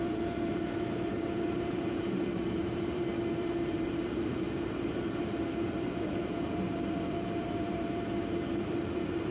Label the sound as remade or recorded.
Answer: remade